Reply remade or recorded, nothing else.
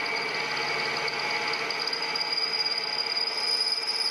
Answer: recorded